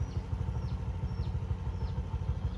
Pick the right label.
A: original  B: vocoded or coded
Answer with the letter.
A